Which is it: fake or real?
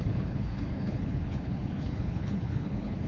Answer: fake